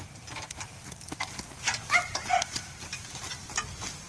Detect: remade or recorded recorded